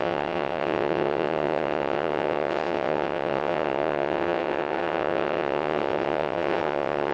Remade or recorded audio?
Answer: remade